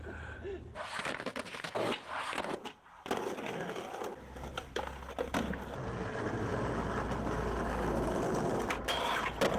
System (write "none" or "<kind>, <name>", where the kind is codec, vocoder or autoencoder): none